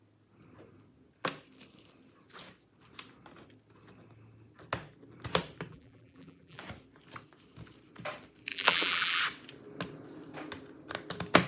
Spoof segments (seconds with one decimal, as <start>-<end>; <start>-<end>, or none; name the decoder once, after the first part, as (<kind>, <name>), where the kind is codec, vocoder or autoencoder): 5.7-6.6 (vocoder, BigVGAN v2); 8.5-9.2